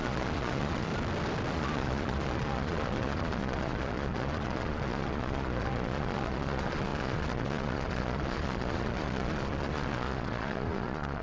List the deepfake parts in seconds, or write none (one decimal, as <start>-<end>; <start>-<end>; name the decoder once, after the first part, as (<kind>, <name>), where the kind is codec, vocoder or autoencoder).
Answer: 0.0-0.9 (vocoder, Vocos); 1.5-11.2